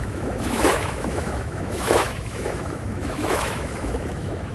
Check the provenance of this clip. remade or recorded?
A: remade